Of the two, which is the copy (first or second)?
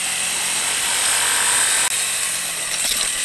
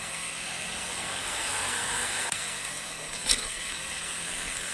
second